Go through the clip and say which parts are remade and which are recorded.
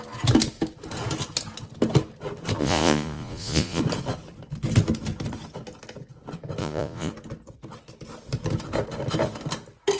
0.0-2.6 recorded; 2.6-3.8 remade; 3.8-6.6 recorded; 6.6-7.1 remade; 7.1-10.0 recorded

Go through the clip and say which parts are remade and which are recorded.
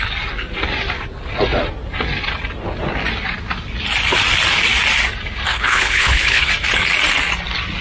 0.0-5.5 recorded; 5.5-6.5 remade; 6.5-7.8 recorded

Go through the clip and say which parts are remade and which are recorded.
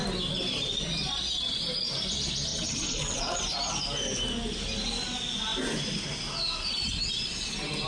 0.0-2.5 recorded; 2.5-3.4 remade; 3.4-7.9 recorded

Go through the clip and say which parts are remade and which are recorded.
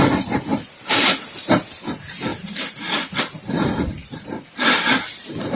0.0-0.5 recorded; 0.5-1.1 remade; 1.1-4.0 recorded; 4.0-5.0 remade; 5.0-5.6 recorded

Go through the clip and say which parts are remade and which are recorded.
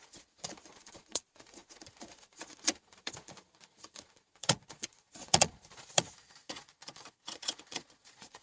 0.0-8.4 remade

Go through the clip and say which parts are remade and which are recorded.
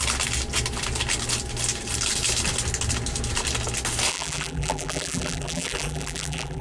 0.0-4.1 recorded; 4.1-6.6 remade